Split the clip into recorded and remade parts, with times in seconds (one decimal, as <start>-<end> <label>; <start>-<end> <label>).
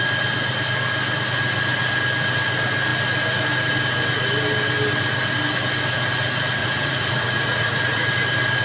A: 0.0-6.6 recorded; 6.6-8.1 remade; 8.1-8.6 recorded